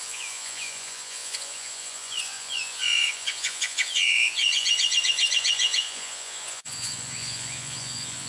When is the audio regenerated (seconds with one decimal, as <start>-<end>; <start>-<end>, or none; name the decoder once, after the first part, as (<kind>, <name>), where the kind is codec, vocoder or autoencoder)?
0.0-8.3 (vocoder, Vocos)